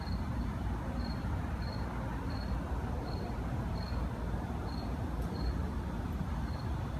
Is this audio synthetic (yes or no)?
yes